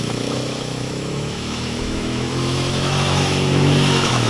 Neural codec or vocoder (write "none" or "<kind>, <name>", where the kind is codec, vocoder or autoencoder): autoencoder, DAC-VAE